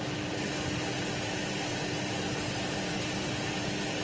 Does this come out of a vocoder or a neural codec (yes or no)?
no